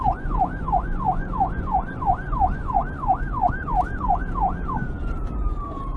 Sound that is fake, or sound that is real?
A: fake